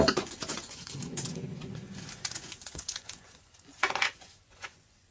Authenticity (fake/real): fake